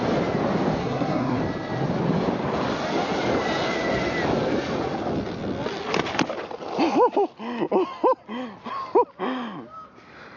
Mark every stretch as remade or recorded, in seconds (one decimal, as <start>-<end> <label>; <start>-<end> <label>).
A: 0.0-0.8 recorded; 0.8-1.4 remade; 1.4-10.4 recorded